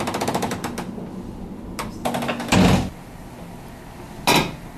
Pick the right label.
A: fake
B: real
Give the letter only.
B